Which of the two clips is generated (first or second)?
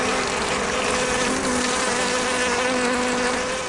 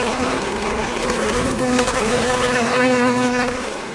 second